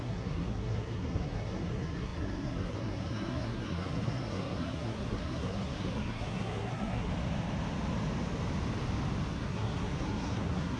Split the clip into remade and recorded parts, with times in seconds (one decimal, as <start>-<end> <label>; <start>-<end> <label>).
0.0-7.1 remade; 7.1-9.3 recorded; 9.3-10.8 remade